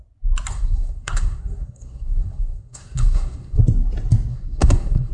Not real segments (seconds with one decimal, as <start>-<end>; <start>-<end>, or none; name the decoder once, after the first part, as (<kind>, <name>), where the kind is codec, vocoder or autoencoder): 0.5-3.6 (codec, SNAC); 4.3-5.1